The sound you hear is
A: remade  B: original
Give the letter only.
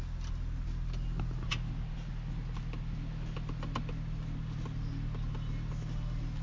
B